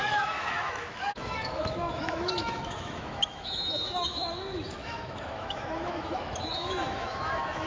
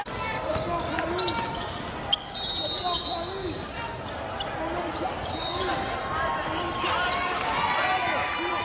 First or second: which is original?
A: second